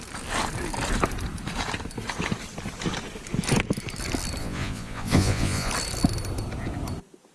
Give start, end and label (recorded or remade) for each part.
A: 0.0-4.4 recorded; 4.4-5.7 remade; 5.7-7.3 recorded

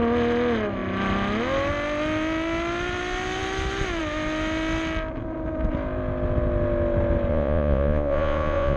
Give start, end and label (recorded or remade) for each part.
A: 0.0-7.3 recorded; 7.3-8.8 remade

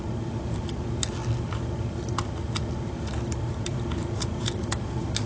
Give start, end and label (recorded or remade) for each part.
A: 0.0-5.3 recorded

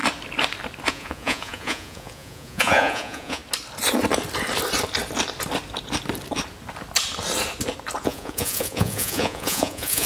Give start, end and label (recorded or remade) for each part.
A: 0.0-0.9 recorded; 0.9-3.4 remade; 3.4-8.0 recorded; 8.0-10.1 remade

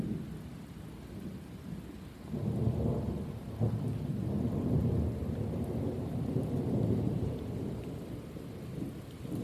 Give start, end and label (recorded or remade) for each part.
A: 0.0-9.4 recorded

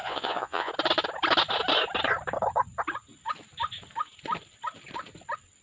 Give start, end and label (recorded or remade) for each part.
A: 0.0-0.7 remade; 0.7-5.6 recorded

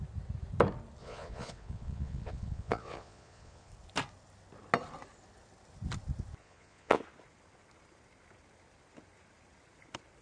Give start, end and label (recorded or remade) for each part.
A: 0.0-1.0 recorded; 1.0-3.7 remade; 3.7-6.4 recorded; 6.4-7.0 remade; 7.0-10.2 recorded

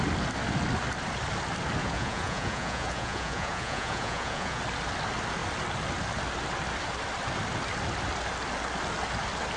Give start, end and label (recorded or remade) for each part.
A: 0.0-1.8 recorded; 1.8-4.6 remade; 4.6-9.6 recorded